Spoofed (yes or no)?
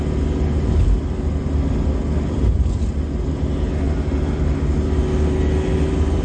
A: no